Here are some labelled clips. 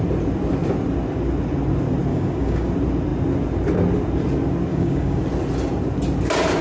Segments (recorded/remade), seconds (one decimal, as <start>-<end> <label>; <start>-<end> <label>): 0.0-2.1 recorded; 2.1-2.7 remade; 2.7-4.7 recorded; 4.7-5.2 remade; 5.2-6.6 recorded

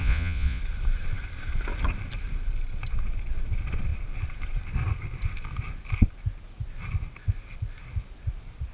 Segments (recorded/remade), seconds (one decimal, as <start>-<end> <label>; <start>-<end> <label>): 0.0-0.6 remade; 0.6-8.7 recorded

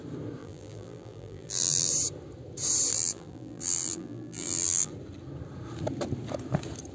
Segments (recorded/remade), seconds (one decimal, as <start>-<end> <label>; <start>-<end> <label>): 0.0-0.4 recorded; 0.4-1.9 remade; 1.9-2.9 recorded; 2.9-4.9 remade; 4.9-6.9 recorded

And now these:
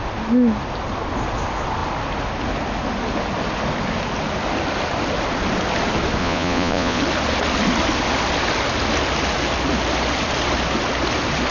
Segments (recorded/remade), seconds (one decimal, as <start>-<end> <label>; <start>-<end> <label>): 0.0-6.2 recorded; 6.2-7.0 remade; 7.0-11.5 recorded

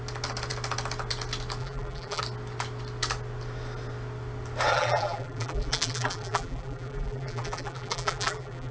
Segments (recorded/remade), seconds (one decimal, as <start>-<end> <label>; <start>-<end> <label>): 0.0-1.6 recorded; 1.6-2.2 remade; 2.2-4.7 recorded; 4.7-8.7 remade

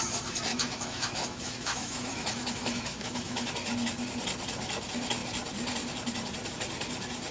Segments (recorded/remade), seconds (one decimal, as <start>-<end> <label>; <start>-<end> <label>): 0.0-0.5 recorded; 0.5-3.5 remade; 3.5-7.3 recorded

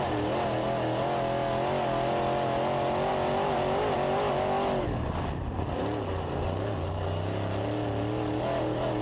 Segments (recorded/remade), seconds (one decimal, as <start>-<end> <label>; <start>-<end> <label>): 0.0-9.0 recorded